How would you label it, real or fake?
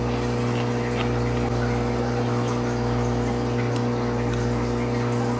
real